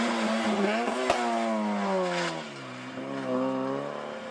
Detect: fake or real real